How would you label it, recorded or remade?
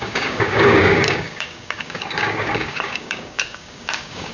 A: remade